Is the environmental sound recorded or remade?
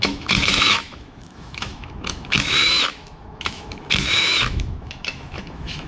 remade